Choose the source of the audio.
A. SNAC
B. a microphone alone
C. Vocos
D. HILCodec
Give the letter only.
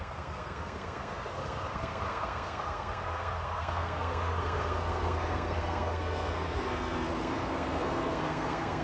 A